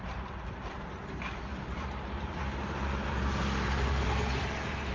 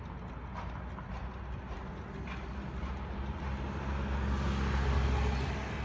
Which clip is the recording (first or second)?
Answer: second